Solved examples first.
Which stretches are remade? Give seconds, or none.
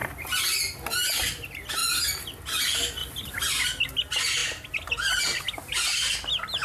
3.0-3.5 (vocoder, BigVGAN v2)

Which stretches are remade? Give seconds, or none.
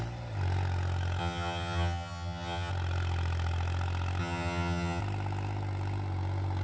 1.2-2.7 (vocoder, HiFi-GAN); 4.2-5.0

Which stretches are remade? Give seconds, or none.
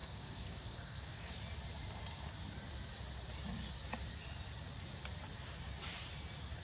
0.0-1.4 (codec, DAC)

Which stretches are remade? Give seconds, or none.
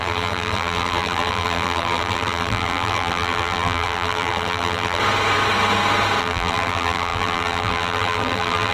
0.0-5.0 (vocoder, BigVGAN v2); 6.2-8.7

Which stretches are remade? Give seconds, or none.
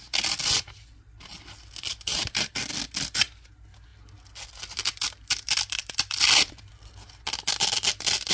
1.9-2.5 (vocoder, BigVGAN v2)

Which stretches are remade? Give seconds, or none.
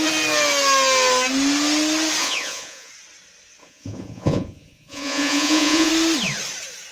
2.2-2.9 (vocoder, Vocos); 3.6-5.9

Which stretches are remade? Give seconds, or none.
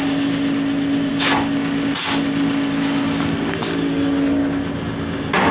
none